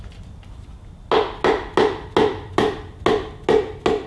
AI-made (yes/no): no